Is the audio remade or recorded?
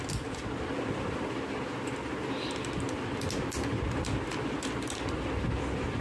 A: recorded